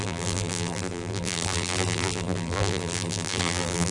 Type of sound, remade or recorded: remade